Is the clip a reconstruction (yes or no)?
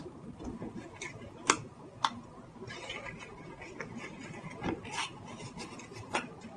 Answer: no